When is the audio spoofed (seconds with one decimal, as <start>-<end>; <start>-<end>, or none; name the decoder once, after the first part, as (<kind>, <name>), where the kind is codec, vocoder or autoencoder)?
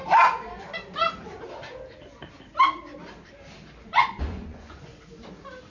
3.9-5.0 (vocoder, Vocos)